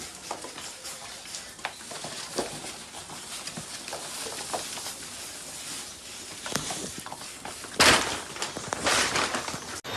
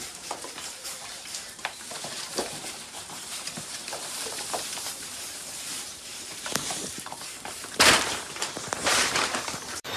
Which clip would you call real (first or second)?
first